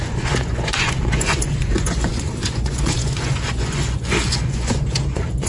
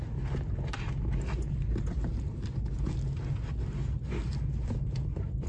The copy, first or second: first